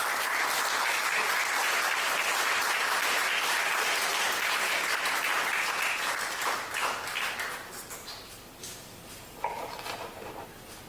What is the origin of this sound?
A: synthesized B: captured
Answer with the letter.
B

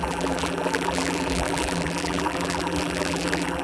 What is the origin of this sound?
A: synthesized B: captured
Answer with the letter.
A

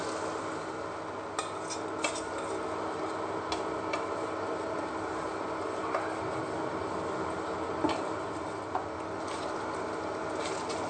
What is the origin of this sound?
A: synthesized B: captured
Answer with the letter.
B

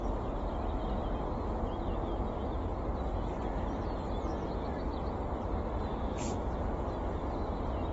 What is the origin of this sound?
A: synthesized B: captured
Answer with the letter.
B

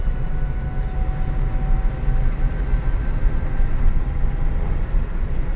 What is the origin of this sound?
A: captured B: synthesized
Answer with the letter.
A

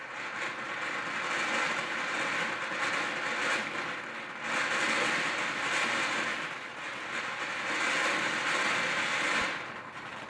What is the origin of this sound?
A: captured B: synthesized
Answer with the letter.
A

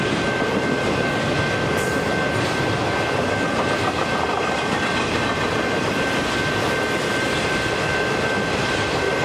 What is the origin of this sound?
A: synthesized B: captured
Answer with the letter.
A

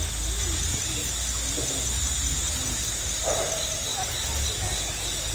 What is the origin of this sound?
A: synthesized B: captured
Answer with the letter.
B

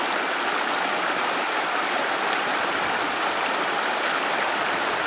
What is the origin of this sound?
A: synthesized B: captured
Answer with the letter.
A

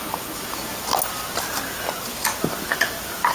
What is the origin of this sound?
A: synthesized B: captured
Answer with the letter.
B